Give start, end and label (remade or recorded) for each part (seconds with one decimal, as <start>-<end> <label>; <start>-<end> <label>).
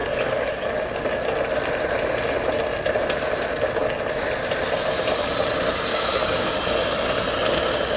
0.0-0.7 remade; 0.7-5.9 recorded; 5.9-6.5 remade; 6.5-8.0 recorded